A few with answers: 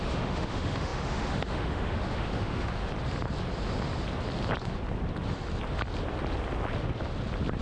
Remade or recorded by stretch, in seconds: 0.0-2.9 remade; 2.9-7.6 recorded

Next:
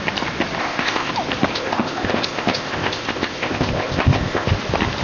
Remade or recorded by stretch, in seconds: 0.0-0.6 recorded; 0.6-1.1 remade; 1.1-1.5 recorded; 1.5-4.5 remade; 4.5-5.0 recorded

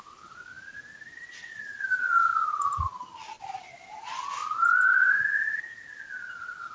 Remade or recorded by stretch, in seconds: 0.0-6.7 recorded

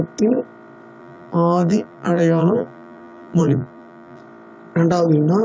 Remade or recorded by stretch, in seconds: 0.0-1.0 recorded; 1.0-4.2 remade; 4.2-5.4 recorded